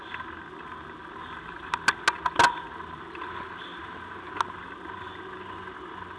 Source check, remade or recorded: recorded